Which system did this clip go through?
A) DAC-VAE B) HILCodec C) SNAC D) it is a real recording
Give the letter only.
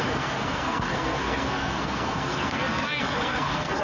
C